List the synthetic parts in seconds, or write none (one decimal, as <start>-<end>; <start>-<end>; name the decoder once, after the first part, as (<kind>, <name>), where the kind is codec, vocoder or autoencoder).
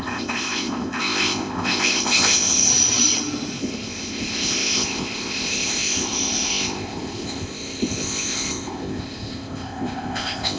0.0-2.7 (codec, ZipCodec); 3.6-10.6